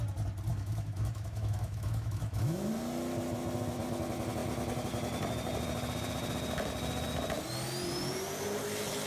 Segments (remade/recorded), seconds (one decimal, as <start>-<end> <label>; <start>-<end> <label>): 0.0-0.5 recorded; 0.5-2.7 remade; 2.7-9.1 recorded